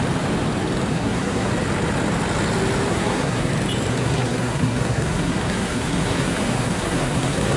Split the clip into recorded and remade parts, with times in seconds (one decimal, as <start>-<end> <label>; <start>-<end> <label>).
0.0-0.9 recorded; 0.9-1.5 remade; 1.5-2.9 recorded; 2.9-3.5 remade; 3.5-3.9 recorded; 3.9-7.6 remade